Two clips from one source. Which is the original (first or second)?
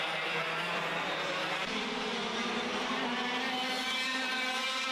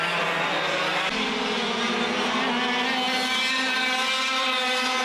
second